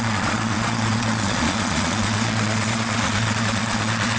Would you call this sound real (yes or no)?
no